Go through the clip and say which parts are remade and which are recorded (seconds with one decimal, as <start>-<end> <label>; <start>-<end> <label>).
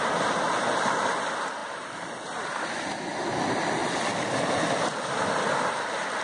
0.0-1.6 recorded; 1.6-2.2 remade; 2.2-6.2 recorded